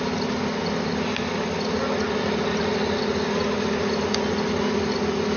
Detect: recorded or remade recorded